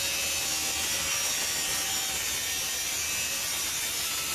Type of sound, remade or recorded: recorded